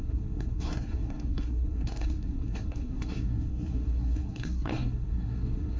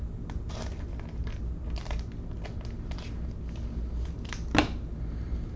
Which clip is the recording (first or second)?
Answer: second